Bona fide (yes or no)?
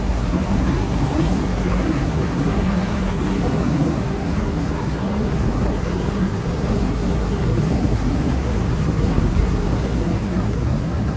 no